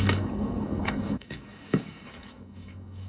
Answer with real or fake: fake